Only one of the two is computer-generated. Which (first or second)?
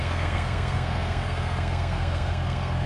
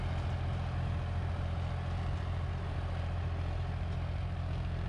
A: first